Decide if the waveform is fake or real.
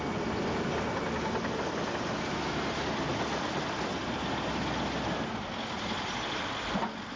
real